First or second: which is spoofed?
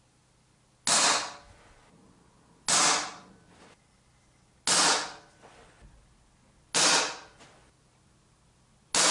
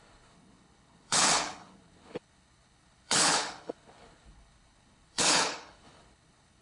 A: second